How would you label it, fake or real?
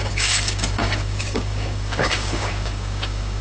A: fake